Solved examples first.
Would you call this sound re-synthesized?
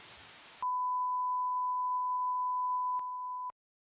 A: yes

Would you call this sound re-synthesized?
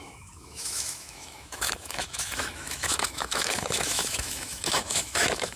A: yes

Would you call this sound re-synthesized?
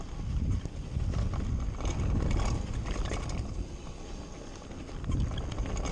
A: no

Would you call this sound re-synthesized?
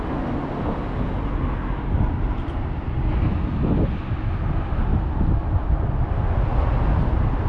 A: no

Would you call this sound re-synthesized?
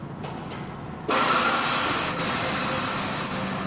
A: no